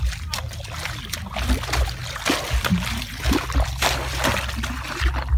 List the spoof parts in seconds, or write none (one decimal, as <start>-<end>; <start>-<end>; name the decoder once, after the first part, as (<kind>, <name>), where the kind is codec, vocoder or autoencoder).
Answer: none